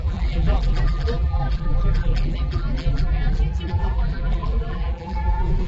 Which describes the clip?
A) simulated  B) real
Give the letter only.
A